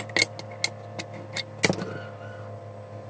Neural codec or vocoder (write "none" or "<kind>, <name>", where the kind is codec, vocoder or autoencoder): none